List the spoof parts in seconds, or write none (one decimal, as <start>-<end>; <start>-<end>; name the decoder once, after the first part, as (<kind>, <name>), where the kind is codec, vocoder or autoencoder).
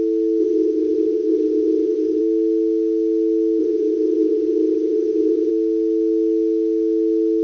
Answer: 0.4-2.2 (vocoder, HiFi-GAN); 3.6-5.5